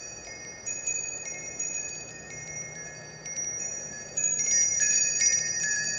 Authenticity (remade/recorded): remade